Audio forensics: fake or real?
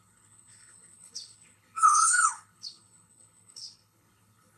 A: fake